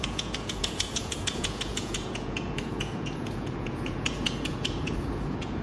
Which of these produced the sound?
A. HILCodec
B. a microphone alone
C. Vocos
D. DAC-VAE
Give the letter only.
C